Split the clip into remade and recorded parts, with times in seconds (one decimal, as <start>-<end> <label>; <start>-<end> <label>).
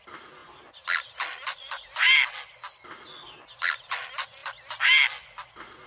0.0-5.9 recorded